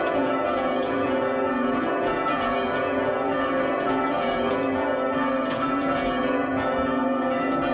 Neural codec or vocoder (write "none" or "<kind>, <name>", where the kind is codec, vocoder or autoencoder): vocoder, Vocos